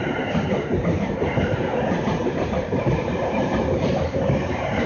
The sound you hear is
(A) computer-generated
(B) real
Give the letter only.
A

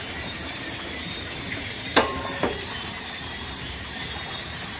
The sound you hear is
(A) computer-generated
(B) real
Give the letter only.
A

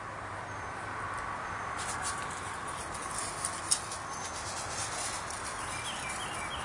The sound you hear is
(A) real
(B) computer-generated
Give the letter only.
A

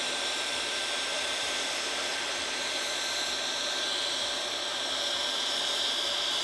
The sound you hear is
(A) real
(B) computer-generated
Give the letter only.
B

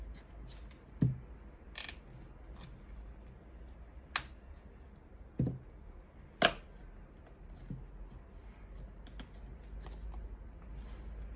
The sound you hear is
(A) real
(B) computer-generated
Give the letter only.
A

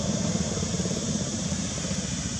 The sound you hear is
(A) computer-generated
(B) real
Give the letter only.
A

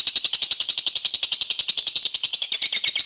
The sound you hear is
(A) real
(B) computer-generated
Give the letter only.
A